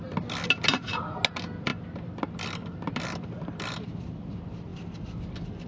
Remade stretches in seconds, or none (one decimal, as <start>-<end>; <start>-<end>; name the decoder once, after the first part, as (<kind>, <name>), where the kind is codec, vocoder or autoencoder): none